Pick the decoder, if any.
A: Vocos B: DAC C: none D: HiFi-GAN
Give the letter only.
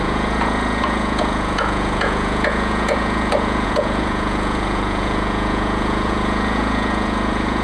A